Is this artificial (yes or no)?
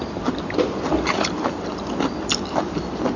yes